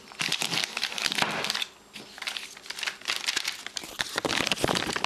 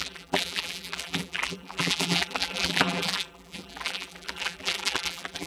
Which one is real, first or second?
first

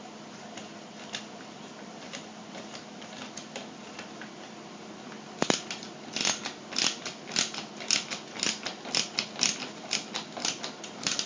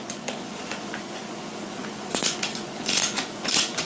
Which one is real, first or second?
first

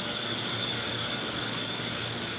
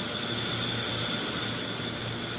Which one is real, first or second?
second